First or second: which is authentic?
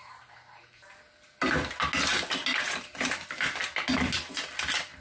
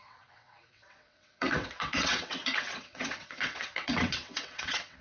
first